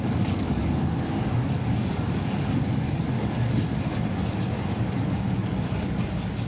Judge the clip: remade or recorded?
remade